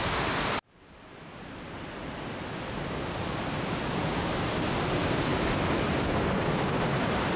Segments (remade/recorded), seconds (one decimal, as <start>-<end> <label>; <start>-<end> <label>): 0.0-7.4 recorded

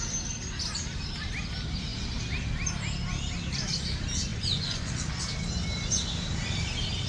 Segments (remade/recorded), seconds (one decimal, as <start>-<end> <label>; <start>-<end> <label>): 0.0-4.3 recorded; 4.3-4.9 remade; 4.9-7.1 recorded

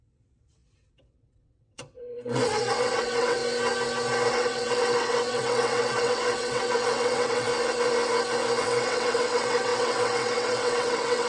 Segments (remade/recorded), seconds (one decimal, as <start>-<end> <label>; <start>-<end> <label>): 0.0-3.4 remade; 3.4-4.3 recorded; 4.3-7.5 remade; 7.5-8.6 recorded; 8.6-11.3 remade

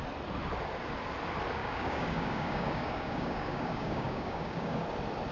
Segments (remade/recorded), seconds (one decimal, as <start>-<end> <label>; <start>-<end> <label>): 0.0-1.6 recorded; 1.6-4.8 remade; 4.8-5.3 recorded

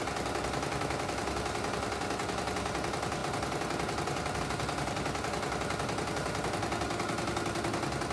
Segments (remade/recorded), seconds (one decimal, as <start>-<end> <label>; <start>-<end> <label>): 0.0-8.1 recorded

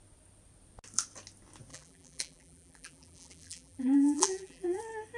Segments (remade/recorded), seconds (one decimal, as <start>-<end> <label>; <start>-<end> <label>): 0.0-1.7 recorded; 1.7-4.8 remade; 4.8-5.2 recorded